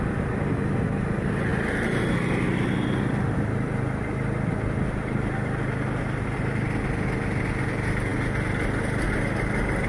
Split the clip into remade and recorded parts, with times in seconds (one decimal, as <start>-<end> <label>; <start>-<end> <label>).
0.0-9.9 recorded

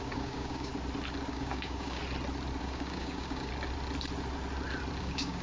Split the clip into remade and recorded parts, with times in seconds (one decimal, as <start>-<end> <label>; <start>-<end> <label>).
0.0-0.7 remade; 0.7-1.3 recorded; 1.3-2.0 remade; 2.0-2.6 recorded; 2.6-3.5 remade; 3.5-5.0 recorded; 5.0-5.4 remade

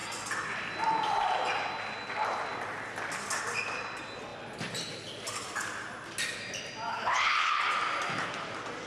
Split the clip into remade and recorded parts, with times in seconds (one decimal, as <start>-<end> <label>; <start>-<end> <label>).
0.0-6.9 recorded; 6.9-7.6 remade; 7.6-8.9 recorded

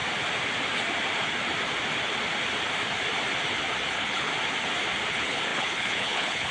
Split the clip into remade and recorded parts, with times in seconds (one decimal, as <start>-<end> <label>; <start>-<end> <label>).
0.0-3.9 recorded; 3.9-4.3 remade; 4.3-5.1 recorded; 5.1-6.5 remade

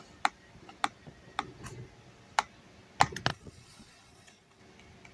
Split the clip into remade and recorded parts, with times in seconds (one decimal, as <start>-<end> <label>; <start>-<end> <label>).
0.0-3.3 recorded; 3.3-4.6 remade; 4.6-5.1 recorded

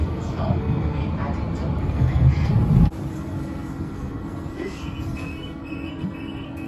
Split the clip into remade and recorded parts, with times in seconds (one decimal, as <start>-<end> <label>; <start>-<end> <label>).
0.0-1.0 remade; 1.0-1.8 recorded; 1.8-2.5 remade; 2.5-3.1 recorded; 3.1-6.7 remade

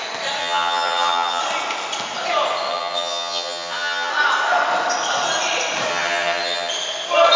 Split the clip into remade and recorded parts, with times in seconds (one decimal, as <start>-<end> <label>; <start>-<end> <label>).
0.0-0.4 recorded; 0.4-1.4 remade; 1.4-2.7 recorded; 2.7-4.1 remade; 4.1-5.9 recorded; 5.9-6.7 remade; 6.7-7.4 recorded

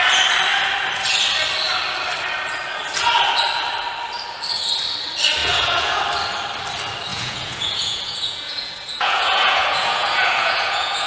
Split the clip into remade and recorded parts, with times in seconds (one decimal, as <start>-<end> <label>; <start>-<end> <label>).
0.0-5.4 recorded; 5.4-6.0 remade; 6.0-7.1 recorded; 7.1-11.1 remade